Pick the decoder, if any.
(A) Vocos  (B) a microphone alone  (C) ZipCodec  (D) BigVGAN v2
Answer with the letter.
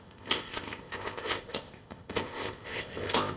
C